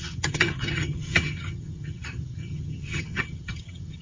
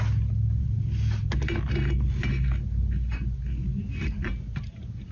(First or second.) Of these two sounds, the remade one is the first